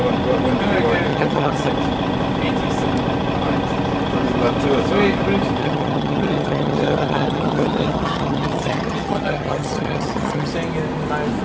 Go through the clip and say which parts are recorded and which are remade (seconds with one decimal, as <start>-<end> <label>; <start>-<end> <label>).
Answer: 0.0-1.1 recorded; 1.1-1.7 remade; 1.7-5.6 recorded; 5.6-10.5 remade; 10.5-11.4 recorded